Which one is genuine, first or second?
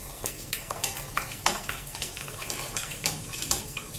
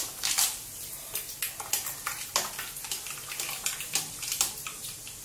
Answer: second